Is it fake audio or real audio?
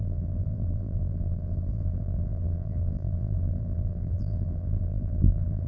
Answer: fake